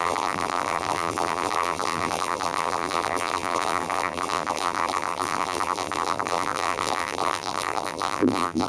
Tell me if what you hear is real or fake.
fake